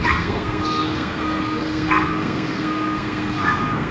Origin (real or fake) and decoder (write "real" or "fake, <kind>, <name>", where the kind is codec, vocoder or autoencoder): fake, codec, SNAC